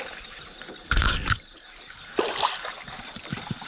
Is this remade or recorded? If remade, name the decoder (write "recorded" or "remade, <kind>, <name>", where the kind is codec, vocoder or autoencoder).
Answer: recorded